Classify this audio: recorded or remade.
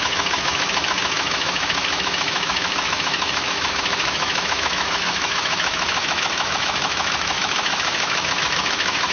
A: remade